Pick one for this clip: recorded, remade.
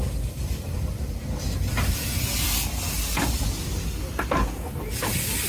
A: recorded